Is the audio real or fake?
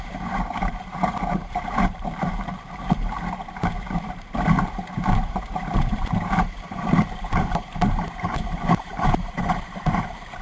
fake